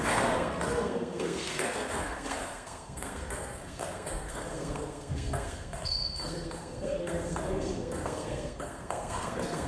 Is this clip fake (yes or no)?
yes